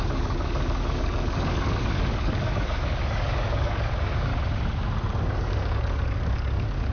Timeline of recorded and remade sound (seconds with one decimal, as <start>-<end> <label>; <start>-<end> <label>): 0.0-4.3 remade; 4.3-5.2 recorded; 5.2-6.9 remade

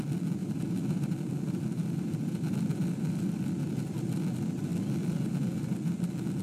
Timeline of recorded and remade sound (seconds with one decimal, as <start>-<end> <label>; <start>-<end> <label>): 0.0-0.4 recorded; 0.4-4.2 remade; 4.2-4.7 recorded; 4.7-5.9 remade; 5.9-6.4 recorded

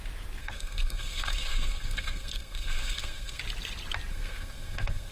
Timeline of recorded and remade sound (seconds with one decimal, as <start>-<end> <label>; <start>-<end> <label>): 0.0-0.4 recorded; 0.4-3.4 remade; 3.4-4.1 recorded; 4.1-5.1 remade

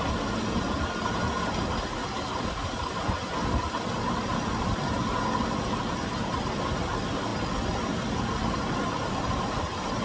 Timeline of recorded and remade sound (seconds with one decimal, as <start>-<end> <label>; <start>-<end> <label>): 0.0-10.0 recorded

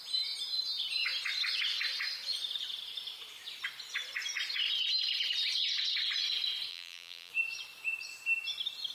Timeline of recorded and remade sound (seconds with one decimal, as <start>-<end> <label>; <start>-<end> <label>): 0.0-6.7 recorded; 6.7-7.3 remade; 7.3-8.9 recorded